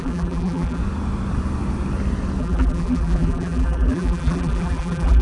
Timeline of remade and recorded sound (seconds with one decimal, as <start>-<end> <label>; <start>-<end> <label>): 0.0-0.8 remade; 0.8-2.4 recorded; 2.4-5.2 remade